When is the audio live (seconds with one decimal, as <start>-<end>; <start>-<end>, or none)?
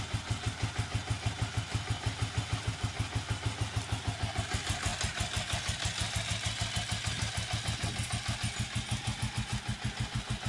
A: 0.0-10.5